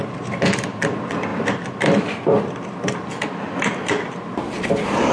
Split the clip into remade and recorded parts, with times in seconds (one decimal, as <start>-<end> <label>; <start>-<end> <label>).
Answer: 0.0-5.1 recorded

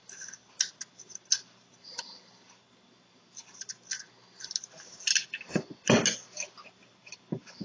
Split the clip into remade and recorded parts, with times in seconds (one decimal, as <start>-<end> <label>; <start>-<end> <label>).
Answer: 0.0-7.6 recorded